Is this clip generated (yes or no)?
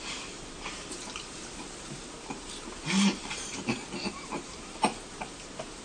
yes